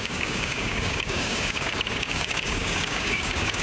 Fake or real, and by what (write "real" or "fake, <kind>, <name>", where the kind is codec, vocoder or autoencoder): fake, codec, DAC